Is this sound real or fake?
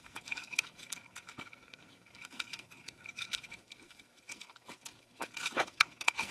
fake